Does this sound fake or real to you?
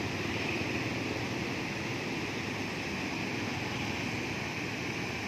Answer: real